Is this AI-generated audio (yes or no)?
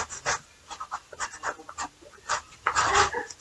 no